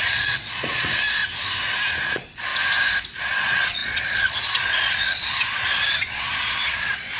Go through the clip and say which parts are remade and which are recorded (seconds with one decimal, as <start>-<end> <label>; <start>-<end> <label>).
0.0-1.2 remade; 1.2-2.0 recorded; 2.0-2.5 remade; 2.5-3.2 recorded; 3.2-7.2 remade